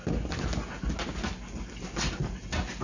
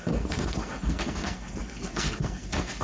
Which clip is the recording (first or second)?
first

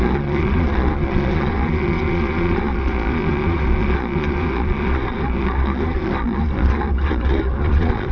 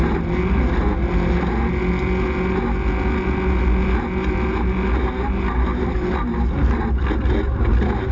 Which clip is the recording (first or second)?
second